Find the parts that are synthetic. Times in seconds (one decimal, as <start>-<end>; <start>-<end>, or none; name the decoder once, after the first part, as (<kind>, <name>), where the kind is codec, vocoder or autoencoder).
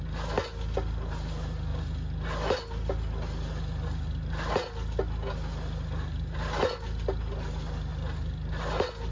none